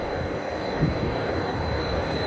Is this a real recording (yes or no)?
no